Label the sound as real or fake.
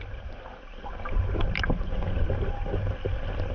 real